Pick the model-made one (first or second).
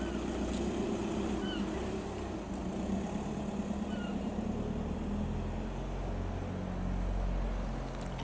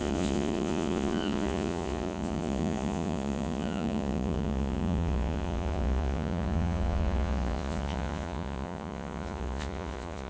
second